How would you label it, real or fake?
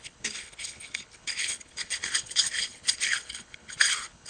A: fake